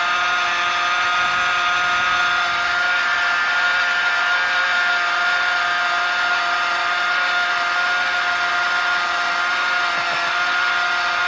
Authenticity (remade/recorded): recorded